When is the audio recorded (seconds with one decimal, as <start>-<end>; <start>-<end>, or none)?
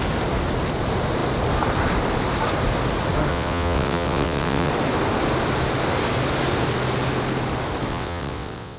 0.0-3.3; 4.7-7.9